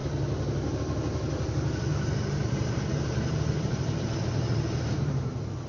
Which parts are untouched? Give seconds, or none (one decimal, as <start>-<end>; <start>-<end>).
0.0-1.9; 5.3-5.7

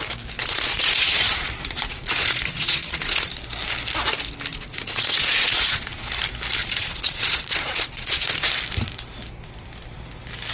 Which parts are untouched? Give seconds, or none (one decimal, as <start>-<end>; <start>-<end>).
0.0-0.4; 3.3-4.5; 6.1-6.6; 8.5-10.5